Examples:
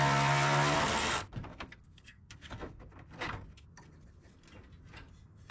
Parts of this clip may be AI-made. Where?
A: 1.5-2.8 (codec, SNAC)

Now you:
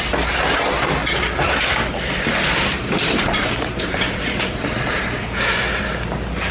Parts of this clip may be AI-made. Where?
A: none

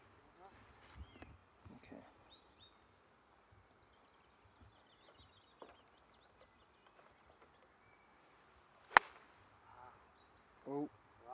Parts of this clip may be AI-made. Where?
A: 1.4-2.9 (vocoder, BigVGAN v2)

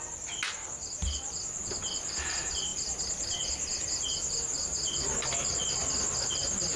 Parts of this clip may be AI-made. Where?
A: none

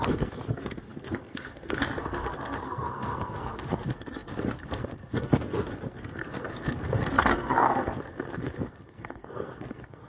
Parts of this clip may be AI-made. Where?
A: 0.0-10.1 (codec, SNAC)

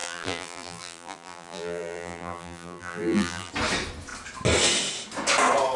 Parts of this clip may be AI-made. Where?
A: 0.0-3.5 (vocoder, BigVGAN v2)